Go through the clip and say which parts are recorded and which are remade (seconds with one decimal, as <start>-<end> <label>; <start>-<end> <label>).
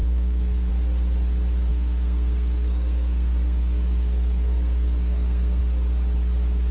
0.0-0.7 remade; 0.7-1.7 recorded; 1.7-5.6 remade; 5.6-6.7 recorded